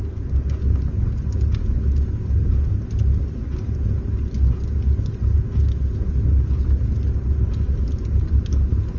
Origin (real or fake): real